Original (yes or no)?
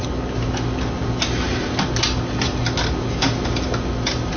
yes